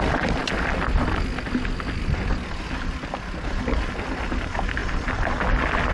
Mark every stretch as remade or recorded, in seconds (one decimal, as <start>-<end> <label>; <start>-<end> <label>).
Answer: 0.0-5.9 recorded